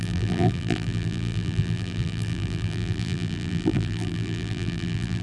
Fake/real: fake